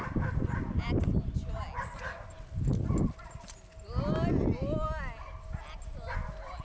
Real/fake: real